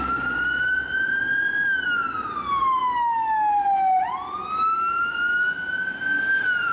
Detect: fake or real real